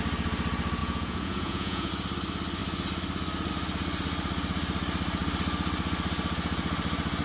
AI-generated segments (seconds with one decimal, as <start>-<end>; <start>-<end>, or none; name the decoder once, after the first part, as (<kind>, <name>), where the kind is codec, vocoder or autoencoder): 0.8-1.9 (vocoder, Vocos)